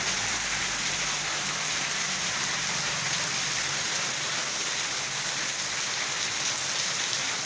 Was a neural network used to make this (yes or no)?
no